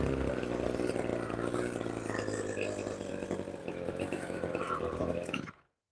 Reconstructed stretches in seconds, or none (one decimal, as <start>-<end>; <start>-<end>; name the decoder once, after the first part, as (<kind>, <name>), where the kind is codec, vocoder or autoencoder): 3.6-4.6 (autoencoder, DAC-VAE); 5.0-5.9